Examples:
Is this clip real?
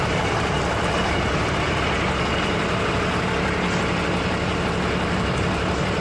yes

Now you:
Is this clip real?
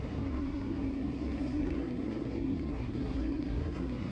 no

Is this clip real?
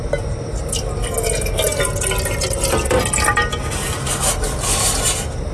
yes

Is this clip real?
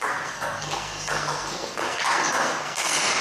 no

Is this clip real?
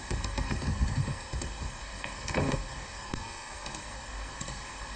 no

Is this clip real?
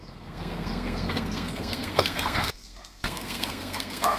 no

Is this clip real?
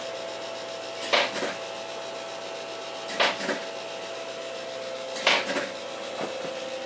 yes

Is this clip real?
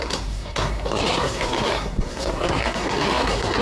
no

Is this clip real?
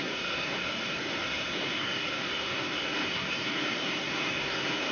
no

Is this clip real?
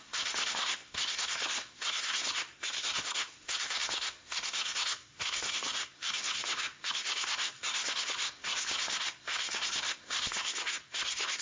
no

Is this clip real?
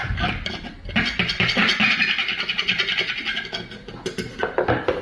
yes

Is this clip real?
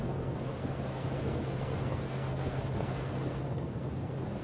no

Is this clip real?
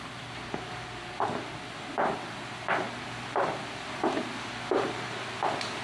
yes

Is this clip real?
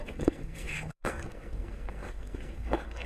no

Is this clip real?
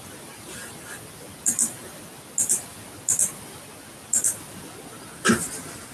yes